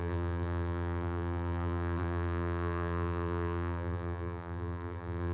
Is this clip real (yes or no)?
no